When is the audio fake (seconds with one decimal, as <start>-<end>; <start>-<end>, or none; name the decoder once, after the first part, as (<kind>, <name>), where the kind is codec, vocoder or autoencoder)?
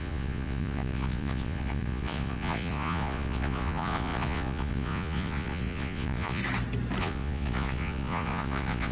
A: 0.0-6.4 (vocoder, Vocos); 7.0-8.9